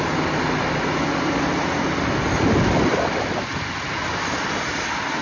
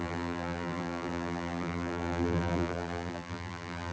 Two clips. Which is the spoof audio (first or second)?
second